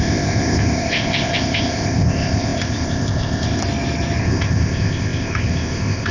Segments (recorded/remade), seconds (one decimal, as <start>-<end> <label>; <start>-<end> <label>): 0.0-3.6 remade; 3.6-4.2 recorded; 4.2-6.1 remade